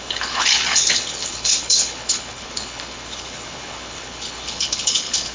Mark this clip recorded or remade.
remade